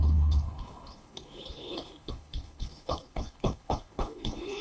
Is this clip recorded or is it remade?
remade